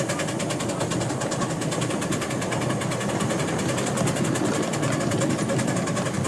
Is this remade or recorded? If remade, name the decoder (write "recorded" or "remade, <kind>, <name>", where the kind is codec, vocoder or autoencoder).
recorded